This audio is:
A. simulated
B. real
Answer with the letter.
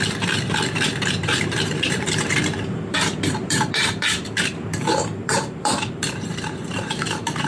A